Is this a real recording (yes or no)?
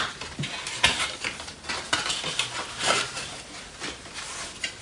yes